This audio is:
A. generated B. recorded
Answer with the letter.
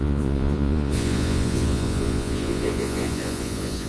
A